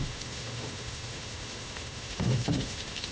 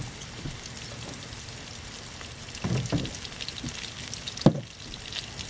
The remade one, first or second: first